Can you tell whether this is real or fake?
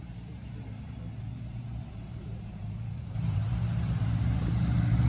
fake